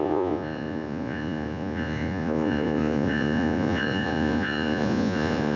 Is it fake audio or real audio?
fake